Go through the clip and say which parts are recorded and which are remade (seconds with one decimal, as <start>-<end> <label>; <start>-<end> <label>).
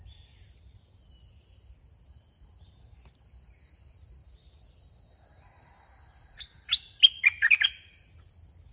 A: 0.0-8.7 recorded